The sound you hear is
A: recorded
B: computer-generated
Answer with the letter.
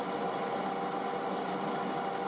A